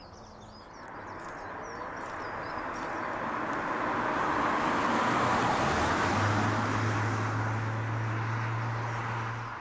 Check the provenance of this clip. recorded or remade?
recorded